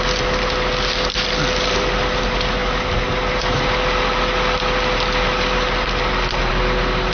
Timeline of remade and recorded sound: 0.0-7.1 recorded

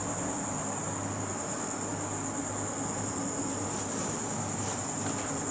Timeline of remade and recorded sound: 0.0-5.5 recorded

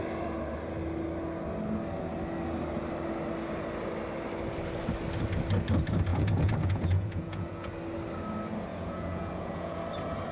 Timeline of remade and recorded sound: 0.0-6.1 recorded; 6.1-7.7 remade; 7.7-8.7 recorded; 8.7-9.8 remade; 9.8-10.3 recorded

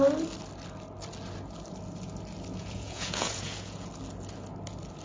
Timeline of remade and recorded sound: 0.0-2.5 recorded; 2.5-3.9 remade; 3.9-5.0 recorded

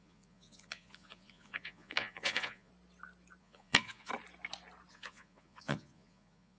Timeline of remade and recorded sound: 0.0-2.7 remade; 2.7-3.4 recorded; 3.4-4.1 remade; 4.1-4.9 recorded; 4.9-6.6 remade